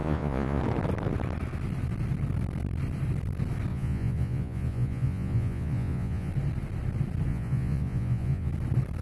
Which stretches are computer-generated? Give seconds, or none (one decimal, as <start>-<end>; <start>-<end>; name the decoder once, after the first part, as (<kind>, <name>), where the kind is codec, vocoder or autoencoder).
0.0-0.6 (vocoder, Vocos); 3.7-6.3; 7.3-8.5